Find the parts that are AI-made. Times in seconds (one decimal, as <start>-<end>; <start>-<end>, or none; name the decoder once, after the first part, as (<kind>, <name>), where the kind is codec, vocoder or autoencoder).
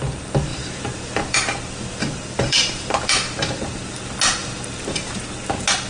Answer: 0.5-4.0 (vocoder, BigVGAN v2); 4.4-5.2